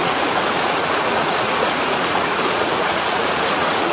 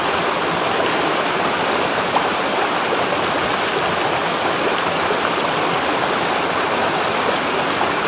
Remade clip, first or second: first